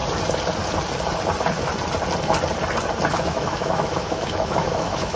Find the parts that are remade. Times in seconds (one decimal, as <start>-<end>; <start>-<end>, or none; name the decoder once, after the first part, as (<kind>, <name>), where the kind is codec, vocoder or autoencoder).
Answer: 3.1-5.2 (autoencoder, DAC-VAE)